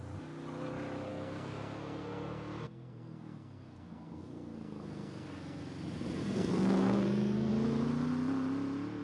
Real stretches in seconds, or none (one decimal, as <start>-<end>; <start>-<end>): 0.0-1.1; 5.6-6.2; 7.5-9.0